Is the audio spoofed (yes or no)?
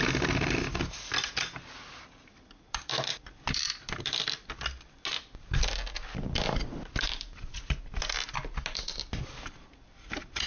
no